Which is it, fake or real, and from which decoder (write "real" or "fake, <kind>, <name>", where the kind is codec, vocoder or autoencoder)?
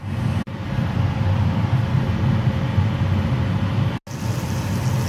real